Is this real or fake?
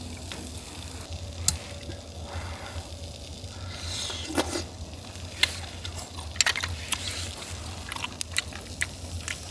real